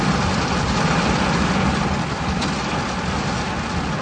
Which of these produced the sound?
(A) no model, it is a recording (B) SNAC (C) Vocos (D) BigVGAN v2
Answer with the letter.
A